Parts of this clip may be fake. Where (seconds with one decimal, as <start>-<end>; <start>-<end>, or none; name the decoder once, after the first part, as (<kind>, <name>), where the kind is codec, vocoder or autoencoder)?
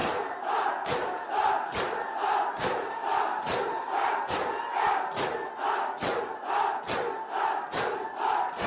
0.0-4.2 (vocoder, BigVGAN v2)